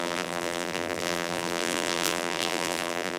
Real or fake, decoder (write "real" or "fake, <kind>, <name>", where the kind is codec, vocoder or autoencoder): fake, vocoder, BigVGAN v2